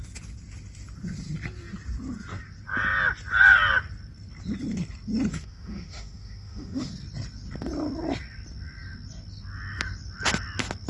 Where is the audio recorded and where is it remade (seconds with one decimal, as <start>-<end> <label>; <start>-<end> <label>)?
0.0-5.3 recorded; 5.3-6.9 remade; 6.9-10.9 recorded